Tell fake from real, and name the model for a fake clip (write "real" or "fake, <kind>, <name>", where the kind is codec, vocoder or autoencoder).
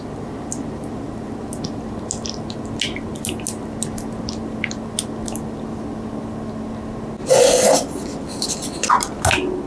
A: real